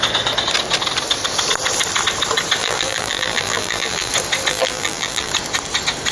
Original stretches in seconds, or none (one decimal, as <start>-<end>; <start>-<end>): 0.0-2.6; 4.1-4.5; 5.3-6.1